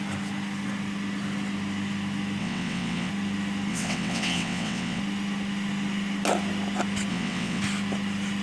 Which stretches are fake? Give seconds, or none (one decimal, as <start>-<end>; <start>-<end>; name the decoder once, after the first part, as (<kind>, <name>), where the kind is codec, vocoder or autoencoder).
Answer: 2.4-3.1 (vocoder, WaveNeXt); 3.7-5.0; 7.1-7.6